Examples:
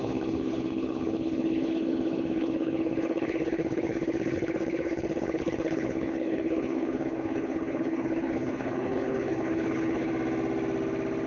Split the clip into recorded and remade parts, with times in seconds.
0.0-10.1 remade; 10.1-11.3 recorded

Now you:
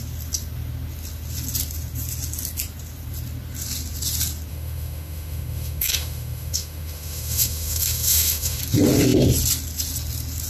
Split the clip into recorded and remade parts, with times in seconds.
0.0-4.5 recorded; 4.5-8.6 remade; 8.6-10.5 recorded

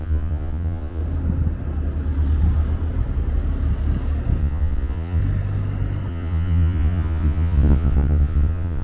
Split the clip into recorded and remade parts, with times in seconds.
0.0-1.0 remade; 1.0-4.4 recorded; 4.4-5.2 remade; 5.2-6.1 recorded; 6.1-8.8 remade

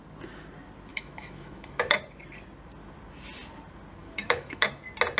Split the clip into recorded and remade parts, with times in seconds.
0.0-0.9 recorded; 0.9-2.0 remade; 2.0-4.0 recorded; 4.0-4.7 remade; 4.7-5.2 recorded

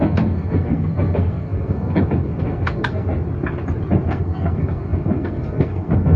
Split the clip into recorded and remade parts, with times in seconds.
0.0-3.1 remade; 3.1-4.1 recorded; 4.1-6.2 remade

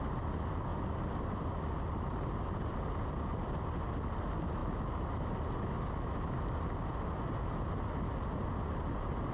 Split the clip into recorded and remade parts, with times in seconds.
0.0-9.3 recorded

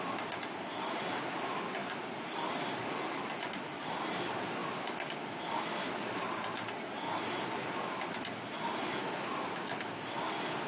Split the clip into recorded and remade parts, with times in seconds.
0.0-10.7 recorded

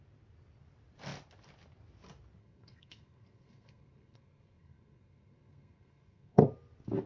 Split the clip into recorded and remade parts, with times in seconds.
0.0-2.4 recorded; 2.4-6.4 remade; 6.4-7.1 recorded